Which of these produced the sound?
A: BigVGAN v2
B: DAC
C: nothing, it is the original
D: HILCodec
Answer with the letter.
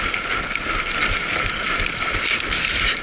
C